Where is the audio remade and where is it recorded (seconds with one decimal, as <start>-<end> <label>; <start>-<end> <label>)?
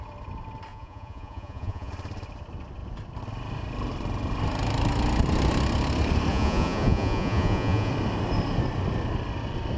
0.0-0.7 recorded; 0.7-1.9 remade; 1.9-6.3 recorded; 6.3-7.9 remade; 7.9-9.8 recorded